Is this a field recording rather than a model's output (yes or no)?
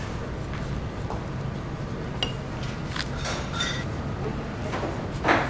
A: yes